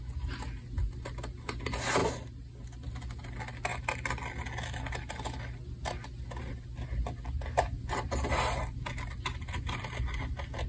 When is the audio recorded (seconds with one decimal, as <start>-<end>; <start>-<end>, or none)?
0.0-10.7